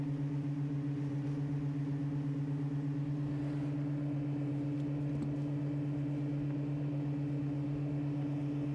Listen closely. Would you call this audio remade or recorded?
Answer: recorded